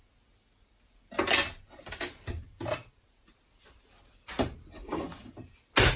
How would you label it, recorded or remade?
recorded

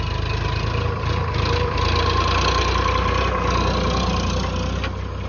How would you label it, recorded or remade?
recorded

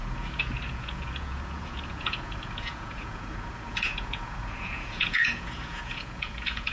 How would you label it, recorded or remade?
remade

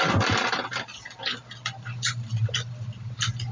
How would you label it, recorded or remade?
remade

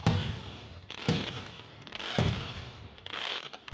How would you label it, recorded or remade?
remade